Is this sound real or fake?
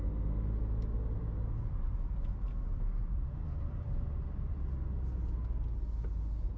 real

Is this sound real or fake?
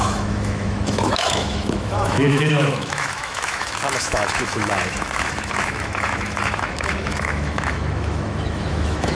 fake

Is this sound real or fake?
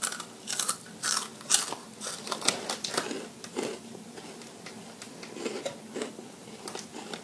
real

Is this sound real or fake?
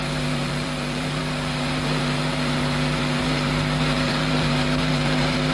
fake